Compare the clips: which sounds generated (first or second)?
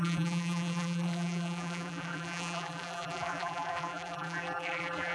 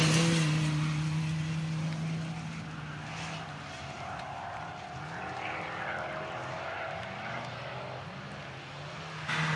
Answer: first